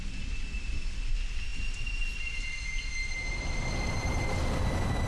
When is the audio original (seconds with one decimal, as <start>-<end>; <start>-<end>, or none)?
0.0-1.5; 4.6-5.1